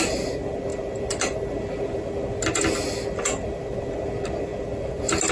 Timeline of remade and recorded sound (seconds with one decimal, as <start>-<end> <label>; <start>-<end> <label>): 0.0-5.3 recorded